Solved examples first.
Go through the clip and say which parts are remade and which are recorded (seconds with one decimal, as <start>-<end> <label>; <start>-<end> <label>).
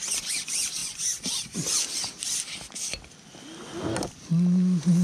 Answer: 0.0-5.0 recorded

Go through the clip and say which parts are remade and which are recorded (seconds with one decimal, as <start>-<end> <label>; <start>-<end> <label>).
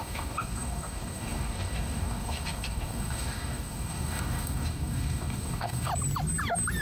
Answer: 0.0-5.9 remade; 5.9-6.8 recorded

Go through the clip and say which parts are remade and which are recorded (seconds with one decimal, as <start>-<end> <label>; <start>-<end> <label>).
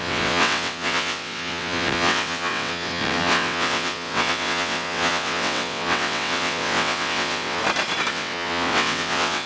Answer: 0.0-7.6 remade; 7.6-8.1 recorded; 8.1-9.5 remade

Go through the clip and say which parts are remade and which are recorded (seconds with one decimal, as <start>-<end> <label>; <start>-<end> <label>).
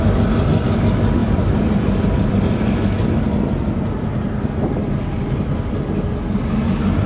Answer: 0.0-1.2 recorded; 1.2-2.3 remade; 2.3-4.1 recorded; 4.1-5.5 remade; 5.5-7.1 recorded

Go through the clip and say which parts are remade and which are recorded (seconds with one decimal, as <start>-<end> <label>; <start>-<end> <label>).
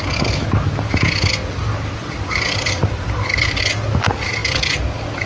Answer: 0.0-2.0 recorded; 2.0-3.6 remade; 3.6-5.3 recorded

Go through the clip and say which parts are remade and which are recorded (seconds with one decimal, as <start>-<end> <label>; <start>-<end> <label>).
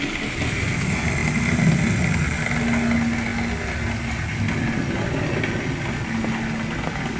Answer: 0.0-7.2 recorded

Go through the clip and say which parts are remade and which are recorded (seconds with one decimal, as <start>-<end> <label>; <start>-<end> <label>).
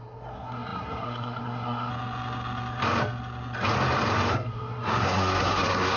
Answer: 0.0-1.9 remade; 1.9-4.3 recorded; 4.3-6.0 remade